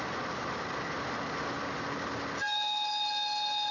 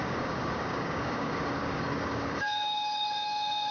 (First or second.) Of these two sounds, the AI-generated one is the second